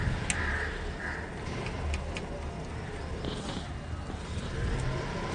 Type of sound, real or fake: real